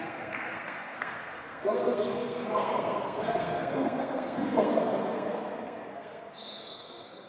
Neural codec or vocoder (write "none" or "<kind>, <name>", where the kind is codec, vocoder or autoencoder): codec, SNAC